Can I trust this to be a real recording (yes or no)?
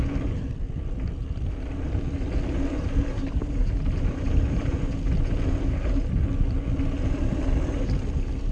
yes